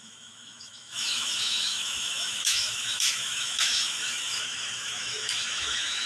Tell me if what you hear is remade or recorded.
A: remade